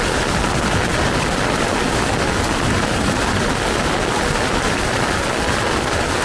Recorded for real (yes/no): yes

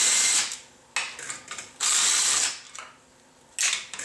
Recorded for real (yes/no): yes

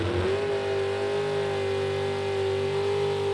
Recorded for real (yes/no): yes